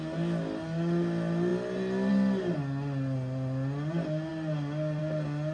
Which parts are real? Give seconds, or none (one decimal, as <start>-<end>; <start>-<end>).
0.0-5.5